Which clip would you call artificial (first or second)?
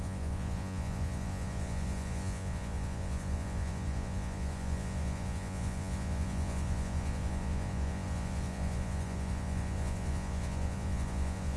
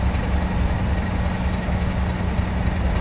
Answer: first